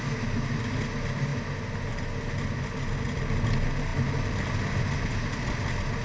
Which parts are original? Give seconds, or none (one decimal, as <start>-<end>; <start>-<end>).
0.0-6.0